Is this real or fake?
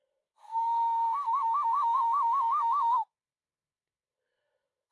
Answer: fake